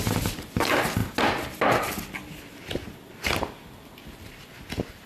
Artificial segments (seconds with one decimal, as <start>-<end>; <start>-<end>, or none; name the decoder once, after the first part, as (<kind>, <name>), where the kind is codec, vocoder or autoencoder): none

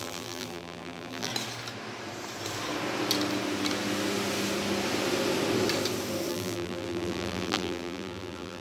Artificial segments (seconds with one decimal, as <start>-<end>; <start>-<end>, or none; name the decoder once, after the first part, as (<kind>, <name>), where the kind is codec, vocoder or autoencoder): 0.0-1.3 (vocoder, BigVGAN v2); 6.3-8.6

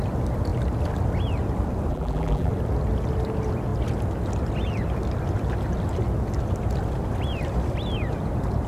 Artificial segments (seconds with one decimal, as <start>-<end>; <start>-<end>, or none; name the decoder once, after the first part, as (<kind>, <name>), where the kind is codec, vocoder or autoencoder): 1.9-2.5 (vocoder, BigVGAN v2)

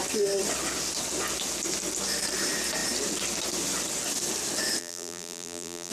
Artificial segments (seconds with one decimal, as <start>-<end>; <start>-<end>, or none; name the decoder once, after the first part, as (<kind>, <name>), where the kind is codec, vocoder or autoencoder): 4.8-5.9 (vocoder, BigVGAN v2)

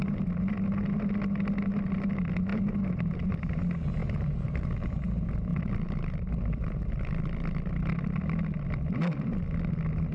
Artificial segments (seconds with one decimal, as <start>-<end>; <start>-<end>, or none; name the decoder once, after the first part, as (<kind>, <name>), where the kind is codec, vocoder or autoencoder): 2.5-3.3 (vocoder, BigVGAN v2); 4.0-4.7; 5.5-6.9

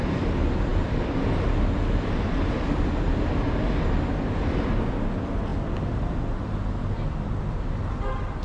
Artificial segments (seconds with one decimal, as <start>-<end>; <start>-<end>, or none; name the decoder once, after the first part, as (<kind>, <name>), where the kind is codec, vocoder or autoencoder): none

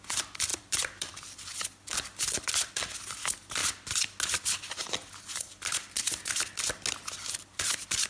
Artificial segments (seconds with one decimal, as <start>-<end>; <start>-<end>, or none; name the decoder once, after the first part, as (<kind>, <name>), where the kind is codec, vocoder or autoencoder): 0.5-2.7 (vocoder, BigVGAN v2)

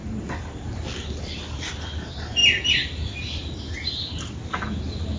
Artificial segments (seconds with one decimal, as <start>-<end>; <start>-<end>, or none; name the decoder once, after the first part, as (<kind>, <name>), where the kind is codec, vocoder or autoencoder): 0.0-0.8 (vocoder, BigVGAN v2); 2.4-3.6